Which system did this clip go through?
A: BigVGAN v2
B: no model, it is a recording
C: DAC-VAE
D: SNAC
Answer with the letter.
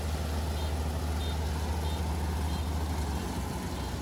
B